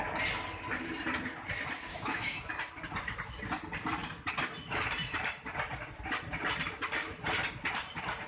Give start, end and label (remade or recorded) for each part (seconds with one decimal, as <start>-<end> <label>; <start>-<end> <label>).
0.0-1.9 recorded; 1.9-2.5 remade; 2.5-8.3 recorded